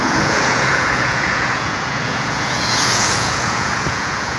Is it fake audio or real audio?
fake